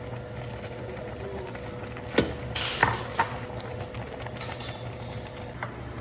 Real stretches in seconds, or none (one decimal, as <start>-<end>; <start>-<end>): 0.0-6.0